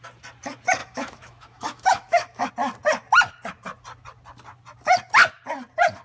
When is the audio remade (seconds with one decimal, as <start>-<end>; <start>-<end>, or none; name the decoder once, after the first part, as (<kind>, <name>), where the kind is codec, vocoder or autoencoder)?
0.8-2.5 (autoencoder, DAC-VAE)